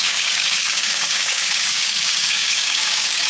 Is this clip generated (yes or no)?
yes